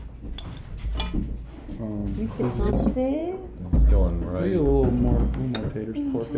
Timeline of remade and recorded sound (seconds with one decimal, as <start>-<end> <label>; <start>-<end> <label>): 0.0-6.4 recorded